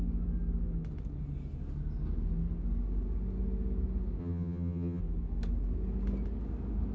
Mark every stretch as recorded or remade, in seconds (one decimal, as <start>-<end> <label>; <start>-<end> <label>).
0.0-4.2 recorded; 4.2-5.0 remade; 5.0-6.9 recorded